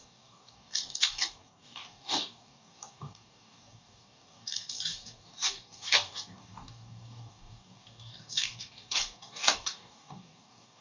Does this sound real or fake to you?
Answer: fake